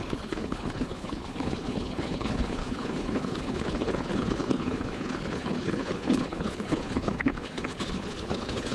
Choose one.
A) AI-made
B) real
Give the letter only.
A